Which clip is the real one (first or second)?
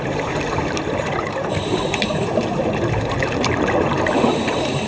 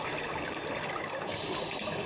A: second